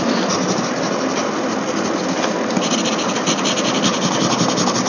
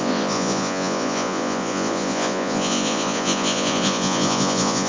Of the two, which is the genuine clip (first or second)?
first